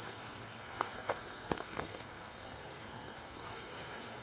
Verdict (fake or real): fake